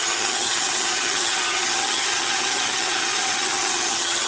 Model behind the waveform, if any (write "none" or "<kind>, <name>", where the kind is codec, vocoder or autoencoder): vocoder, HiFi-GAN